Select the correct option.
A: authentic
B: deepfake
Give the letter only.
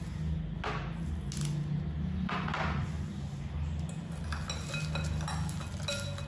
A